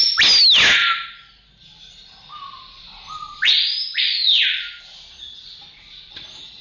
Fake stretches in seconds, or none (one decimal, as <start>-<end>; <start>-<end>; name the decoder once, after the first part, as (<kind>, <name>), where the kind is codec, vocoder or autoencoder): none